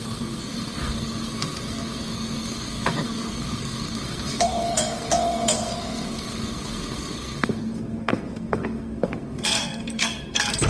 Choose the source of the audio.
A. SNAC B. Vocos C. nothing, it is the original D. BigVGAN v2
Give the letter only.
A